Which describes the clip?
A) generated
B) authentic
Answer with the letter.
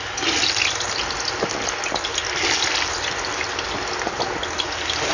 B